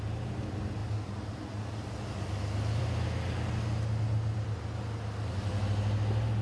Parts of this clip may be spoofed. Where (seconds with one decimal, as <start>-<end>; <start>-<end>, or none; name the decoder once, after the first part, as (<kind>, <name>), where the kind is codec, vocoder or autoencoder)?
none